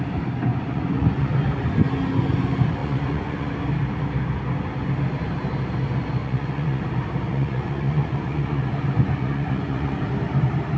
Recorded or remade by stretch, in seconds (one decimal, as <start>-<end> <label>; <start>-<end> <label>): 0.0-0.5 recorded; 0.5-1.3 remade; 1.3-2.8 recorded; 2.8-3.5 remade; 3.5-6.2 recorded; 6.2-6.8 remade; 6.8-7.3 recorded; 7.3-10.0 remade; 10.0-10.8 recorded